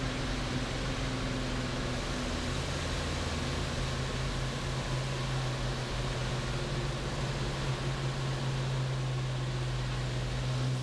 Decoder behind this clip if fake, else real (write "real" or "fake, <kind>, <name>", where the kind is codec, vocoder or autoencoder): real